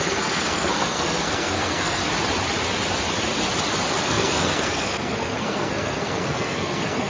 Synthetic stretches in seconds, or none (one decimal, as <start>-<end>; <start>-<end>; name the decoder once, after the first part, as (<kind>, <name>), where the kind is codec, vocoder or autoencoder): 0.0-2.0 (codec, SNAC); 4.0-7.1